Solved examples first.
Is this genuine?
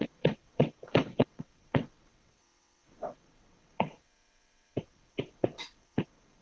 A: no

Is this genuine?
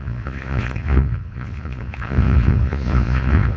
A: no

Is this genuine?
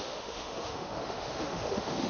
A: no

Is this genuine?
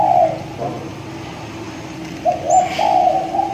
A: yes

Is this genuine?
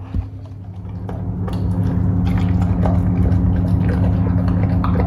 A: yes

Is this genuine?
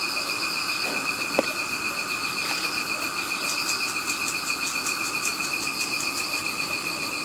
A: yes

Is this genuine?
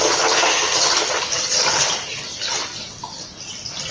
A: yes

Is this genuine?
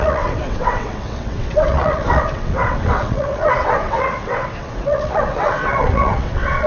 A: no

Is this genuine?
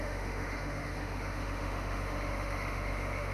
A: no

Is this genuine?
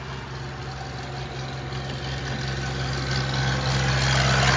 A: yes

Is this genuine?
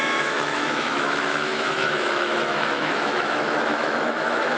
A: no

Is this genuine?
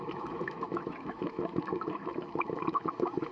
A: no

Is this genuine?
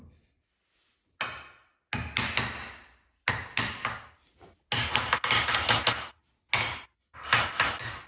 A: yes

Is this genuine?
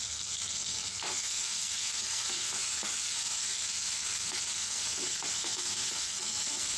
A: no